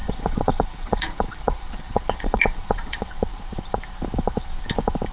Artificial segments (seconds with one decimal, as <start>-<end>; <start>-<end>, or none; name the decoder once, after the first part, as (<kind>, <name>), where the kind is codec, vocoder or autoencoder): 0.0-3.1 (vocoder, Vocos)